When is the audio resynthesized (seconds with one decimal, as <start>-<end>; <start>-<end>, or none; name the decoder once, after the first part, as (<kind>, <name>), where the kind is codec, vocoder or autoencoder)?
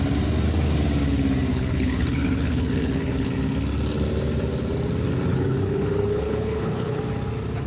1.5-3.3 (codec, HILCodec); 5.3-7.0